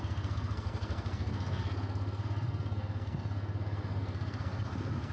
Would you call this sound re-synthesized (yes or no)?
yes